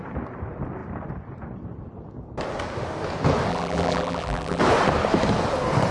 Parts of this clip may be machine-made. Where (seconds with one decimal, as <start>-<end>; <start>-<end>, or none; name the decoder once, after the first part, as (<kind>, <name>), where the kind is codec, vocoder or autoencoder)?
3.5-4.6 (vocoder, BigVGAN v2)